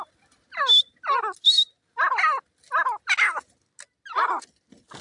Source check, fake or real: real